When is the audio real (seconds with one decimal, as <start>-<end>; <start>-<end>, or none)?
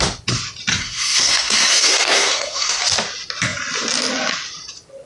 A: 0.0-0.7; 2.8-5.1